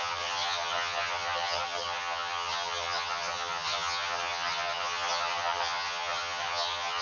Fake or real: fake